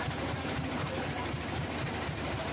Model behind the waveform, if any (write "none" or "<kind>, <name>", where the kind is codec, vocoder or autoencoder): vocoder, BigVGAN v2